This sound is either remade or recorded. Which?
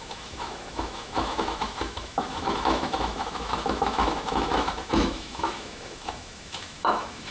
remade